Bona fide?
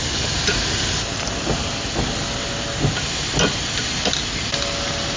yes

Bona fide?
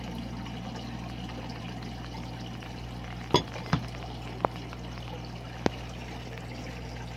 yes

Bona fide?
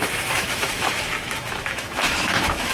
no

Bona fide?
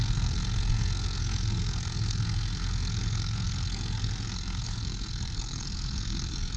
no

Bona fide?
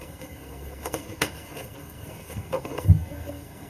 no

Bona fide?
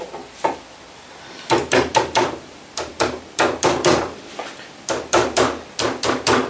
no